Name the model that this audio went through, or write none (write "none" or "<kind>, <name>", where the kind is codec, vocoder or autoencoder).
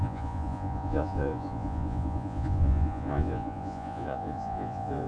vocoder, Vocos